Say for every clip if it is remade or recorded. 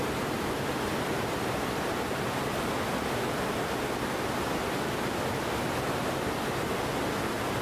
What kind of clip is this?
recorded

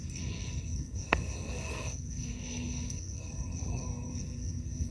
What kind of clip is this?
remade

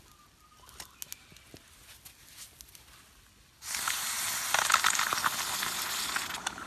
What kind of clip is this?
recorded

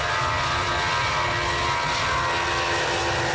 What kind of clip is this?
recorded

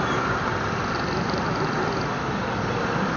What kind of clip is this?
recorded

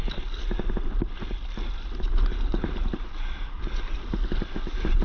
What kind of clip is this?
recorded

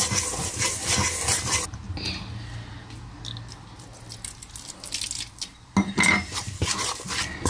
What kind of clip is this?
recorded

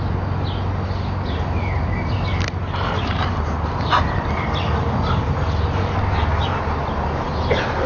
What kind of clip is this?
recorded